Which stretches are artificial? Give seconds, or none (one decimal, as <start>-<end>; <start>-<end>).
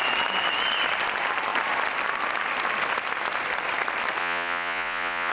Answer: 4.2-5.3